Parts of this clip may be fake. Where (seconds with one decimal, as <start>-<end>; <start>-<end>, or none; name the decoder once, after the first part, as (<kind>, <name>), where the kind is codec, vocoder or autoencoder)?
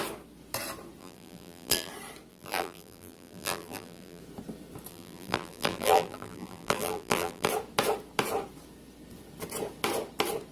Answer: 1.0-1.9 (vocoder, BigVGAN v2); 2.3-4.2; 4.9-7.5